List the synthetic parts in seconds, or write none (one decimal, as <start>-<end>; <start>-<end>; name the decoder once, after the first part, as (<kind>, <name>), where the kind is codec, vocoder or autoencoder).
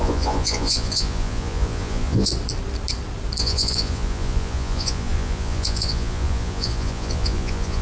0.0-2.3 (vocoder, Vocos); 3.4-7.8